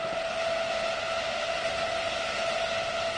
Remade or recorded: recorded